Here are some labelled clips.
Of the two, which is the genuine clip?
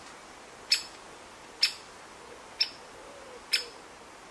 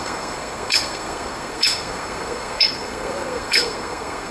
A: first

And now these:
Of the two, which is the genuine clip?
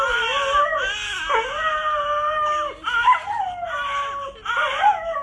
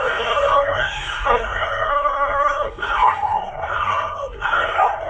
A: first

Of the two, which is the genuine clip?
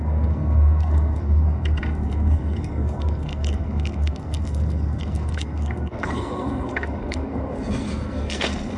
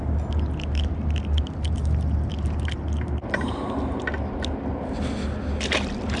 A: second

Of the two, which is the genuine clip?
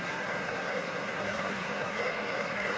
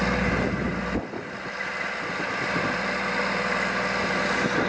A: second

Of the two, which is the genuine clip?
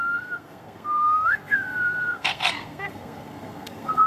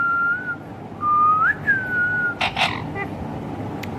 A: second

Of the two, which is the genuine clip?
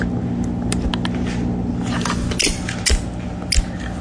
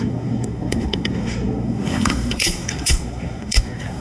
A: first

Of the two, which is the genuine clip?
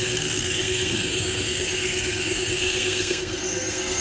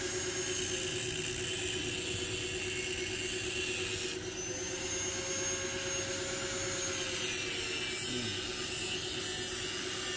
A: second